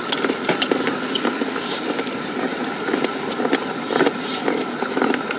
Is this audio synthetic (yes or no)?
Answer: no